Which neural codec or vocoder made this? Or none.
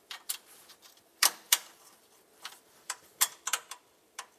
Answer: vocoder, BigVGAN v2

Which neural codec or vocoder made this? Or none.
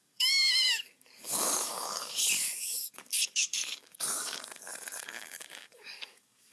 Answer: codec, DAC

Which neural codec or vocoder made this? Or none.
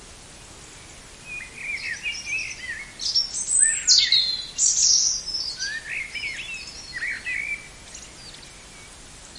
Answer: none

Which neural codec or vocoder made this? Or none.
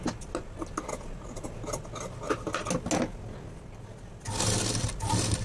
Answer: none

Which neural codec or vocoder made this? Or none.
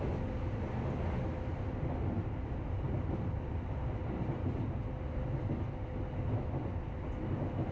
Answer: none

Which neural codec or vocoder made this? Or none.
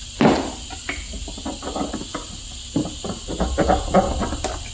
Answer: none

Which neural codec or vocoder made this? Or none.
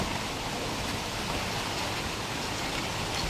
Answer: none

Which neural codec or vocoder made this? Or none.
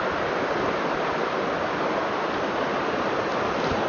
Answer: none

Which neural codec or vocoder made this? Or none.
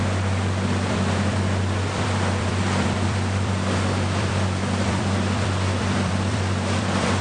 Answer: vocoder, BigVGAN v2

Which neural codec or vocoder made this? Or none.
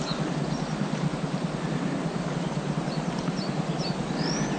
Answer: none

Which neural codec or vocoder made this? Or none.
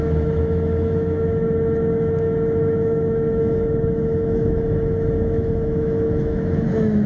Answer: autoencoder, DAC-VAE